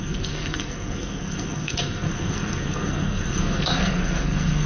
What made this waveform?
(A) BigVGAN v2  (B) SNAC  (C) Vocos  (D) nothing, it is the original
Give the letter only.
B